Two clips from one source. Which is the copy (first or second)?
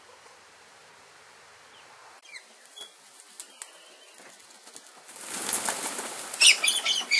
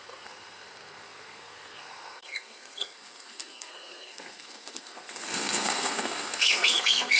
second